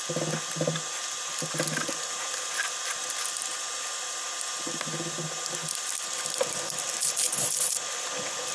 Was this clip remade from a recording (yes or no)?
no